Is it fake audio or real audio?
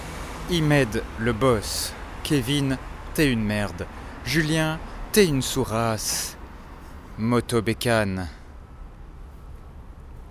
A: real